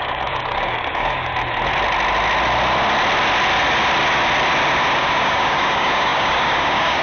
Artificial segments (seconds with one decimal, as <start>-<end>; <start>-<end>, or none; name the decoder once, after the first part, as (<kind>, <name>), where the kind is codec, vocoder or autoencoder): 0.0-1.3 (codec, DAC); 5.0-7.0